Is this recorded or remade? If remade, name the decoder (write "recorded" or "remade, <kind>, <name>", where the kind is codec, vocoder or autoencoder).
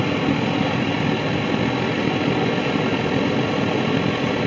recorded